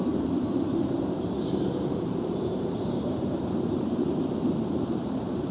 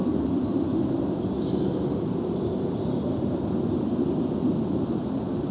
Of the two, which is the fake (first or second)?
first